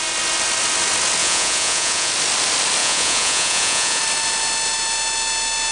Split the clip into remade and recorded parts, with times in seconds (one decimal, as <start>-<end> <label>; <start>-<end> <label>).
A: 0.0-1.2 recorded; 1.2-2.1 remade; 2.1-2.8 recorded; 2.8-4.0 remade; 4.0-5.7 recorded